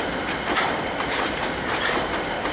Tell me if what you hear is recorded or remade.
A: recorded